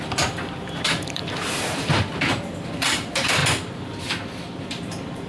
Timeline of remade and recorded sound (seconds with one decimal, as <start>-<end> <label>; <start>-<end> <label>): 0.0-3.4 remade; 3.4-4.6 recorded; 4.6-5.3 remade